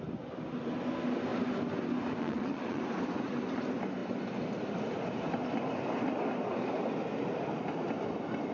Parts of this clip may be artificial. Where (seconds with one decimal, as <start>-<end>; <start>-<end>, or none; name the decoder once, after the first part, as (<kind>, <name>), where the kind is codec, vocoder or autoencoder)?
2.2-2.8 (vocoder, WaveNeXt)